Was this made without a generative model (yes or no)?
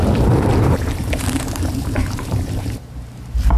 no